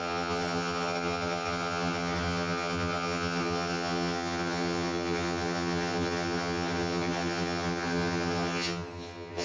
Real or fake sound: fake